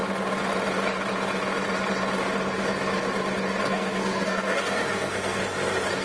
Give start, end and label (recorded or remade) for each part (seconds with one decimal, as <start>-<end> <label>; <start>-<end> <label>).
0.0-3.6 recorded; 3.6-5.4 remade; 5.4-6.0 recorded

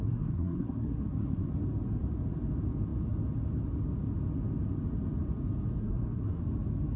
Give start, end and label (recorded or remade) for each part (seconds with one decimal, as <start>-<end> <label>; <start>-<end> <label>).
0.0-1.5 remade; 1.5-5.8 recorded; 5.8-6.4 remade; 6.4-7.0 recorded

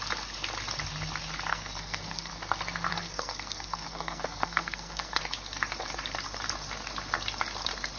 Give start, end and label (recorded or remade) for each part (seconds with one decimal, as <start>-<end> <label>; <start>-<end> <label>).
0.0-1.5 recorded; 1.5-2.3 remade; 2.3-2.9 recorded; 2.9-5.2 remade; 5.2-8.0 recorded

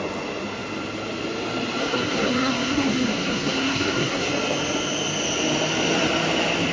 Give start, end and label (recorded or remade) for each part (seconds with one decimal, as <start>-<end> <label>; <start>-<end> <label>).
0.0-1.8 recorded; 1.8-4.3 remade; 4.3-6.7 recorded

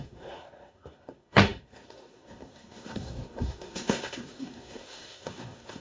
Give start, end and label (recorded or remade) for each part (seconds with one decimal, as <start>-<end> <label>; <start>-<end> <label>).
0.0-5.8 remade

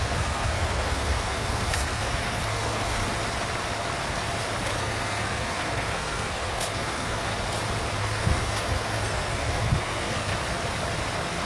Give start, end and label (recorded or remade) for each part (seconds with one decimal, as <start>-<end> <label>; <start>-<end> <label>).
0.0-3.0 remade; 3.0-4.8 recorded; 4.8-7.3 remade; 7.3-8.0 recorded; 8.0-10.3 remade; 10.3-11.5 recorded

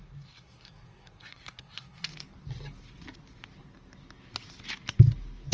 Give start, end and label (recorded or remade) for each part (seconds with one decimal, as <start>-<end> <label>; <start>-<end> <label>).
0.0-2.1 remade; 2.1-5.5 recorded